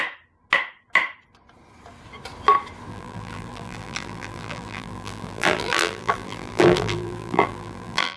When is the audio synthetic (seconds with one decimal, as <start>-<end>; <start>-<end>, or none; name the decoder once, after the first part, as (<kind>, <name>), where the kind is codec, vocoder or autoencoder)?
2.9-8.2 (vocoder, BigVGAN v2)